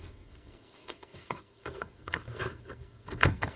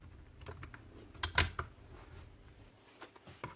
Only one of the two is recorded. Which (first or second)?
second